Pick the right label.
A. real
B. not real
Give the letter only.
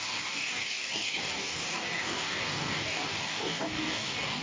B